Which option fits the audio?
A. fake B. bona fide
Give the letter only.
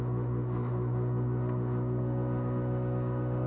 A